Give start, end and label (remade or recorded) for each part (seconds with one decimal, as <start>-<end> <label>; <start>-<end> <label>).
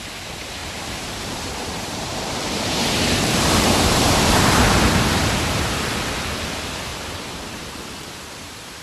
0.0-0.6 recorded; 0.6-4.6 remade; 4.6-6.9 recorded; 6.9-8.8 remade